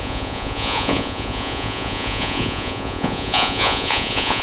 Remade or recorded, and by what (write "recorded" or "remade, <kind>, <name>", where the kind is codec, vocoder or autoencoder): remade, vocoder, Vocos